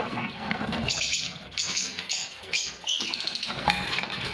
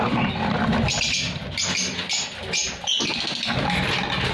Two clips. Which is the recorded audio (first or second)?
second